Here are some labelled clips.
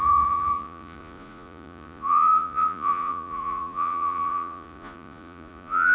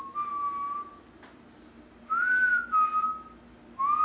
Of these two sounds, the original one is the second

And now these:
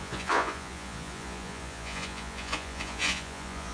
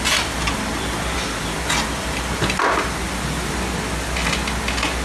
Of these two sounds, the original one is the second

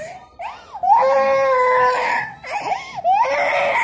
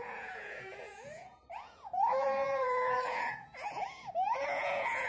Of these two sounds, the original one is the first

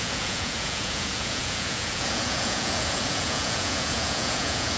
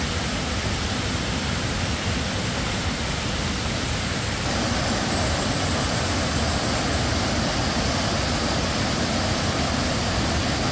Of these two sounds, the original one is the second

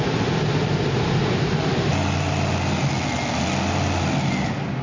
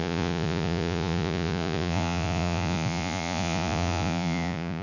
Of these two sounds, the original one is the first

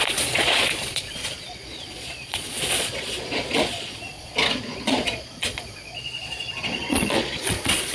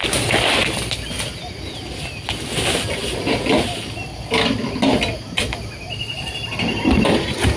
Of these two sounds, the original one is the second